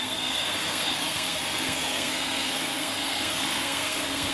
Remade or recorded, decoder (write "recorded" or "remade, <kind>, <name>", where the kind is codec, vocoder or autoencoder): remade, codec, SNAC